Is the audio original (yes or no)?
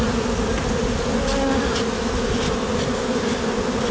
yes